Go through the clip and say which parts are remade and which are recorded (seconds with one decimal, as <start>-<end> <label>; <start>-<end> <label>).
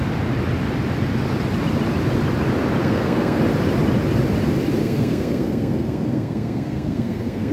0.0-2.8 recorded; 2.8-3.4 remade; 3.4-4.8 recorded; 4.8-7.5 remade